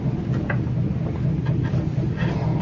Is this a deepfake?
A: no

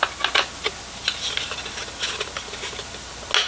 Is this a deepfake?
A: no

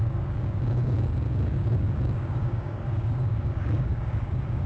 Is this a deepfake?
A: yes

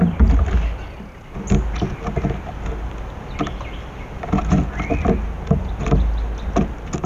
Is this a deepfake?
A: no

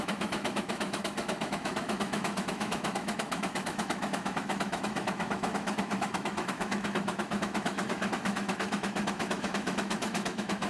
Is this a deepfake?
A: yes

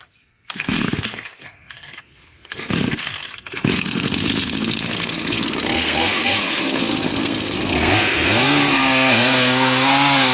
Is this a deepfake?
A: yes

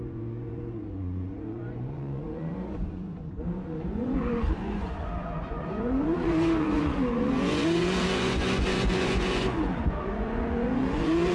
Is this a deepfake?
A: yes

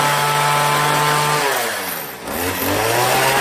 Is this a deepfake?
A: no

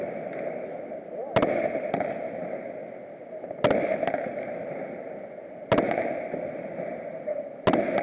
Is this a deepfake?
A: no